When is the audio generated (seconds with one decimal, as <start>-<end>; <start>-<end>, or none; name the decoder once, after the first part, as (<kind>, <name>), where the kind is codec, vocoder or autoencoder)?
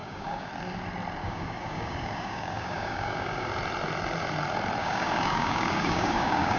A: 0.0-0.5 (codec, DAC); 1.2-3.5; 4.8-6.6